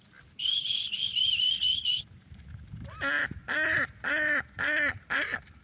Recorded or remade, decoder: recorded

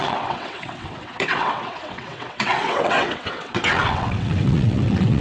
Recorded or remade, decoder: remade, vocoder, WaveNeXt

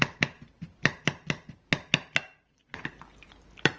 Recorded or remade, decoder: recorded